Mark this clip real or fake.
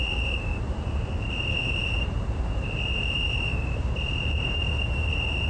fake